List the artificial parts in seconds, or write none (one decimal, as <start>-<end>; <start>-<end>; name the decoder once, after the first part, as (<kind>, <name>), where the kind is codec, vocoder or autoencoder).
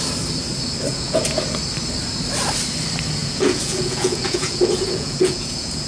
0.9-1.4 (vocoder, Vocos); 3.2-5.9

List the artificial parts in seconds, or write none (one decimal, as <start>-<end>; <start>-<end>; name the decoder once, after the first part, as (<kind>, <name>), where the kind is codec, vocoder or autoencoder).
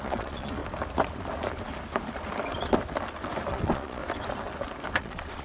0.0-0.6 (vocoder, Vocos); 3.5-4.0; 5.0-5.4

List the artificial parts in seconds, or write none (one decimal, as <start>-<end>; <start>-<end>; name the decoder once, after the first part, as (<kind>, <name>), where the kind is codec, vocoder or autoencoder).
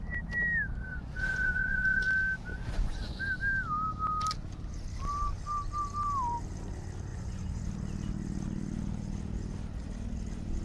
0.9-2.0 (vocoder, Vocos); 2.5-3.2; 7.1-7.6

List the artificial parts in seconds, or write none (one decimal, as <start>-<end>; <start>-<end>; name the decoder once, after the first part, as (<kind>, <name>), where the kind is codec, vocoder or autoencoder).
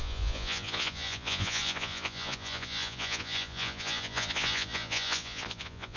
0.0-6.0 (vocoder, Vocos)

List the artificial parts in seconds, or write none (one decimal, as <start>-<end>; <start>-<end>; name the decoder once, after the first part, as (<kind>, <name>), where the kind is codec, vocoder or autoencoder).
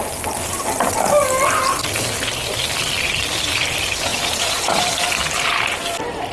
4.1-4.8 (vocoder, Vocos)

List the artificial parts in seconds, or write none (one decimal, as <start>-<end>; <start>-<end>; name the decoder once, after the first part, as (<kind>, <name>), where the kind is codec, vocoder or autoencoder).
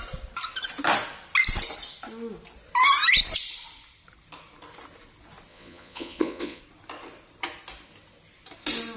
5.5-6.6 (vocoder, Vocos)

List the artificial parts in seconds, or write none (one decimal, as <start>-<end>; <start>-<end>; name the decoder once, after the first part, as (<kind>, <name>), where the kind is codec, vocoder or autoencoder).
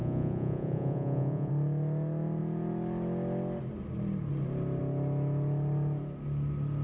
0.0-1.5 (vocoder, Vocos)